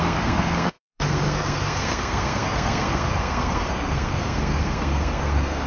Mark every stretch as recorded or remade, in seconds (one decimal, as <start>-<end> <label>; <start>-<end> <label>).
0.0-5.7 remade